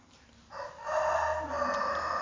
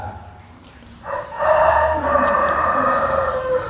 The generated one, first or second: second